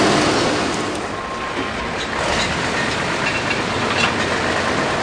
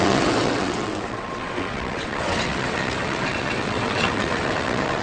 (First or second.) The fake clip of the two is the second